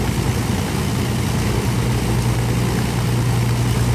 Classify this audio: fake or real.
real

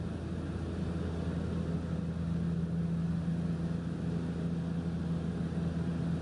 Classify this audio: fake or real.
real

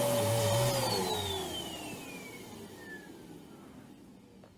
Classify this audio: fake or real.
real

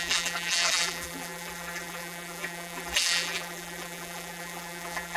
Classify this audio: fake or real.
fake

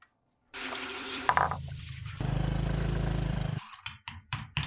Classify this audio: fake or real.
fake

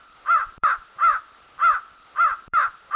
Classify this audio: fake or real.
fake